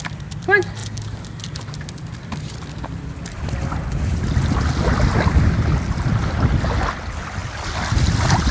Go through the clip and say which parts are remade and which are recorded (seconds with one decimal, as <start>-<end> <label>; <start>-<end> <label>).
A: 0.0-8.5 recorded

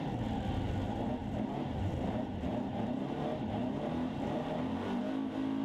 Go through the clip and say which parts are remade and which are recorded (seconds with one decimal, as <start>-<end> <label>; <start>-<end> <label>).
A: 0.0-1.2 recorded; 1.2-3.2 remade; 3.2-3.6 recorded; 3.6-5.0 remade; 5.0-5.6 recorded

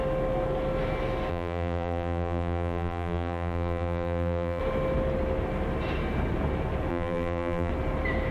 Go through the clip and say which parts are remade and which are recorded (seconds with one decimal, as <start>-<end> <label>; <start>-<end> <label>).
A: 0.0-1.3 recorded; 1.3-4.6 remade; 4.6-6.9 recorded; 6.9-7.7 remade; 7.7-8.3 recorded